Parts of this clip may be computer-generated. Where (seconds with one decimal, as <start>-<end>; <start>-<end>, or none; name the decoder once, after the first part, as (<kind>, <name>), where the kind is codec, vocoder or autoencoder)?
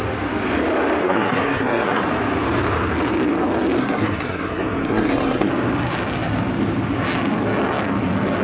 1.0-2.0 (codec, SNAC); 3.8-5.5